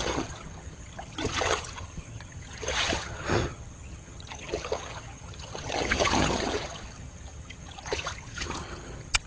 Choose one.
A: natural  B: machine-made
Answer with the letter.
B